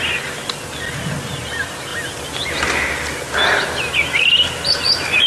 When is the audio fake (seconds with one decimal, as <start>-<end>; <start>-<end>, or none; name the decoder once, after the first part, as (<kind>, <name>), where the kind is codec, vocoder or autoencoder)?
none

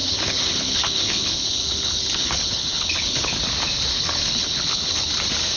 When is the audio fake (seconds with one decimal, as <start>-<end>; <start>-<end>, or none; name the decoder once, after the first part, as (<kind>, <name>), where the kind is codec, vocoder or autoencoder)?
0.0-3.4 (codec, HILCodec); 3.9-5.1

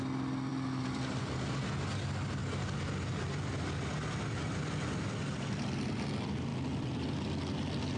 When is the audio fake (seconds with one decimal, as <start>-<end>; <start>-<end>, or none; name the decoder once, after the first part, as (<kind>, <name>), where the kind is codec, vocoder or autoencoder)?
none

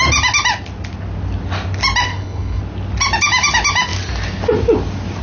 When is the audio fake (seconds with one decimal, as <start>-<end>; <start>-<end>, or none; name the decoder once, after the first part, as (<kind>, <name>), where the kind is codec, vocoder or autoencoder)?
2.1-2.6 (codec, HILCodec)

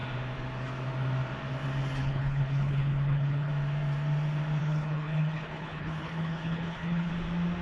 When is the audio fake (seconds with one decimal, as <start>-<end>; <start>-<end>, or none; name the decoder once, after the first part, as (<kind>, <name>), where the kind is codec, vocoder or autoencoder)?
2.0-3.5 (codec, HILCodec); 4.6-7.1